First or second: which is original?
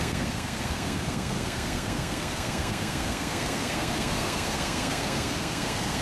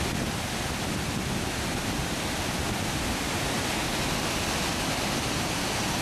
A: second